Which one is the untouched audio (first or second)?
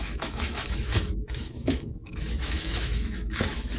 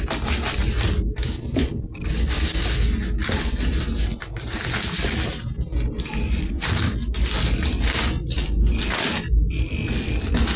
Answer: second